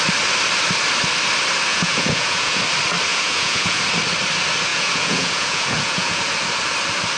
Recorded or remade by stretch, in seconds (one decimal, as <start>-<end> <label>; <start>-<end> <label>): 0.0-1.7 recorded; 1.7-2.6 remade; 2.6-3.1 recorded; 3.1-3.8 remade; 3.8-4.7 recorded; 4.7-6.2 remade; 6.2-7.2 recorded